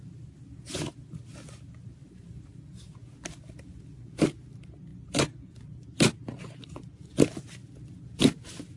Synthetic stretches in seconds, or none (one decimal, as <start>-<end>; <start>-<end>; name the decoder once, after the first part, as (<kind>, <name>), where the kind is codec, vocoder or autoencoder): 2.0-2.7 (vocoder, BigVGAN v2)